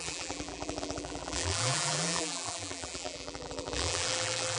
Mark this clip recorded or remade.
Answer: remade